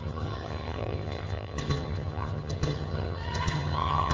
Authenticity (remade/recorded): remade